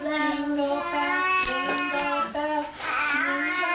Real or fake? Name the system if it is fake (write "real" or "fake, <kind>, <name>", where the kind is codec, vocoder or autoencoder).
real